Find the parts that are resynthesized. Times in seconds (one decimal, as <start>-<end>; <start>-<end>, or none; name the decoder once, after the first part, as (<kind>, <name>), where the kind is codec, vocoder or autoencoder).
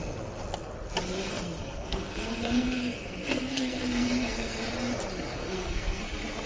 1.2-4.6 (codec, SNAC); 5.4-6.0